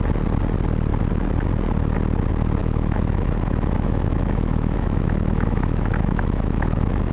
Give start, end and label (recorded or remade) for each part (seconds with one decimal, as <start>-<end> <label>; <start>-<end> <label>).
0.0-2.6 recorded; 2.6-7.1 remade

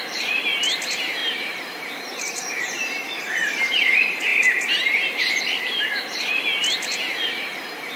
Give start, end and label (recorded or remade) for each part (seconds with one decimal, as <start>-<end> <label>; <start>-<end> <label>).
0.0-6.6 remade; 6.6-8.0 recorded

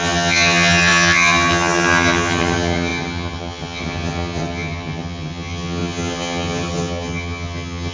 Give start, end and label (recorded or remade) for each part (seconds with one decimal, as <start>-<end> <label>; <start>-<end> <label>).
0.0-7.9 remade

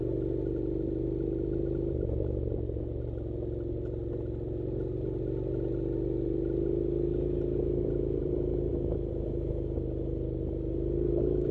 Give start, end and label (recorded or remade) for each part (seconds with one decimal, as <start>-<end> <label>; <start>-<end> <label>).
0.0-8.2 recorded; 8.2-8.7 remade; 8.7-11.5 recorded

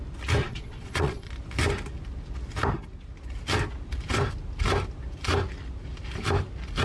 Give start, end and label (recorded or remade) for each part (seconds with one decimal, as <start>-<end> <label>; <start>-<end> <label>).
0.0-0.4 recorded; 0.4-1.3 remade; 1.3-6.8 recorded